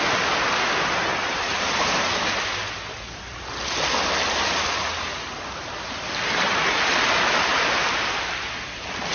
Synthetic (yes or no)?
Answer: no